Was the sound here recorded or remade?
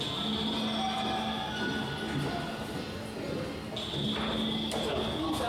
recorded